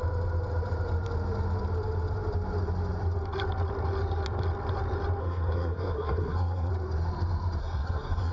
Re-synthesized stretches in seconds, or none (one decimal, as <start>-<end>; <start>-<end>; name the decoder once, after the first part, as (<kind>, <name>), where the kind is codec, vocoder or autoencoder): 5.2-6.7 (codec, SNAC); 7.6-8.3